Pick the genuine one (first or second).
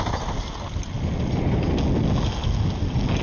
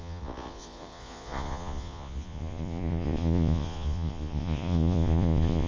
first